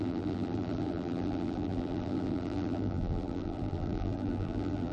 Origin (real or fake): fake